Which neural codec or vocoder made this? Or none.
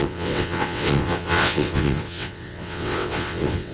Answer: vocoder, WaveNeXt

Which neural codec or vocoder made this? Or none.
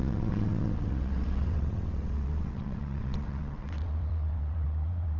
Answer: vocoder, WaveNeXt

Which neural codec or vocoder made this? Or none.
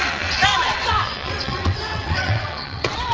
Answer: vocoder, WaveNeXt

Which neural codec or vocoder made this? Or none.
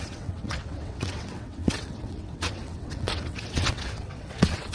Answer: vocoder, WaveNeXt